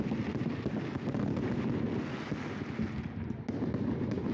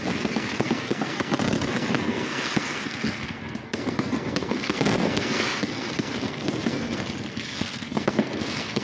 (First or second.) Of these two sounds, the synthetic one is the second